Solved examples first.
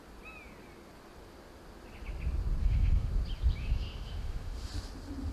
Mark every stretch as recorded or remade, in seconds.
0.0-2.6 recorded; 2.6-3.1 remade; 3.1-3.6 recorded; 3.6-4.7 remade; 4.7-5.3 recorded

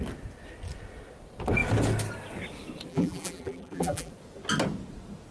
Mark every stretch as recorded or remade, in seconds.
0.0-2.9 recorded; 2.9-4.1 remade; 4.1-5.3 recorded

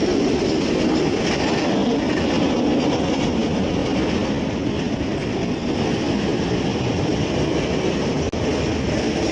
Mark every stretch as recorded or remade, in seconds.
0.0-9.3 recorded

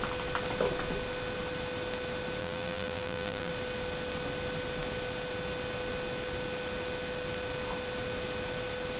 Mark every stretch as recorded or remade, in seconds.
0.0-2.4 recorded; 2.4-3.5 remade; 3.5-9.0 recorded